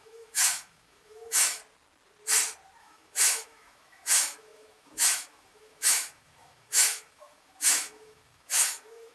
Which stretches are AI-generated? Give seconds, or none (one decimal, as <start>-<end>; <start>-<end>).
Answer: 0.0-1.6; 2.8-9.1

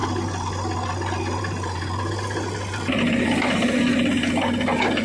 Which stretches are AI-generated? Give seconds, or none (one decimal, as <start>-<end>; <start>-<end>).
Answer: none

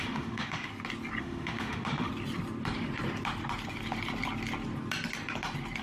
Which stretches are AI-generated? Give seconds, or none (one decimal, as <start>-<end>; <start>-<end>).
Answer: 0.0-0.7; 1.2-2.1

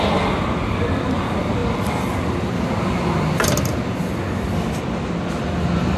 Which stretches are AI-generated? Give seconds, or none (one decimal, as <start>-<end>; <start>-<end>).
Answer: none

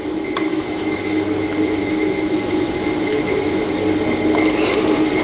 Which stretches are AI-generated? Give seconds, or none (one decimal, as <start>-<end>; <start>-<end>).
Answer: 0.5-3.6